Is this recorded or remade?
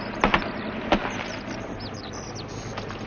recorded